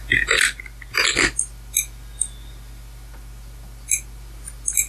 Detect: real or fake real